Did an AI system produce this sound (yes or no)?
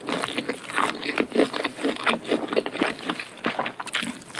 no